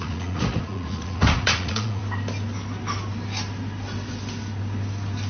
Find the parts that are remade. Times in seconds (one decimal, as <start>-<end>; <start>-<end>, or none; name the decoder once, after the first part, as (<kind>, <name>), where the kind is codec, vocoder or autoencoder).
0.0-2.0 (vocoder, Vocos)